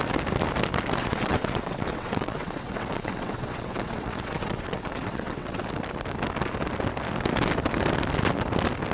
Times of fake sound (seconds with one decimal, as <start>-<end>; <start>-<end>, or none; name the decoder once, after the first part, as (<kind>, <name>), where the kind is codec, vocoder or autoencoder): 1.0-5.6 (vocoder, WaveNeXt)